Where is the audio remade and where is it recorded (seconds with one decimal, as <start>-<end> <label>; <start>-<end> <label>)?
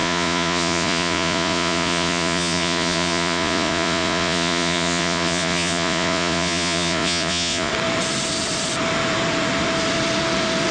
0.0-7.7 remade; 7.7-10.7 recorded